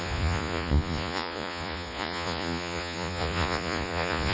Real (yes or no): no